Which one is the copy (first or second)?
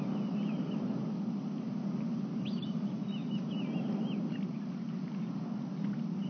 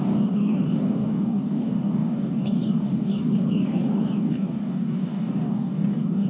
second